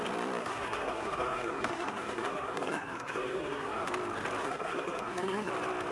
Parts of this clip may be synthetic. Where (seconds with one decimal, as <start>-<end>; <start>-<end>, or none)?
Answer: 0.4-3.9; 4.4-5.5